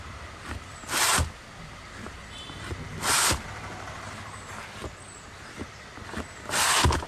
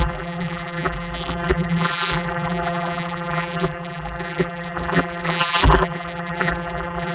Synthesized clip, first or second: second